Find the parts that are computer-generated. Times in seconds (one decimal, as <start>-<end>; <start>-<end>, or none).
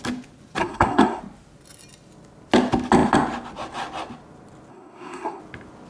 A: 0.6-1.2; 4.7-5.4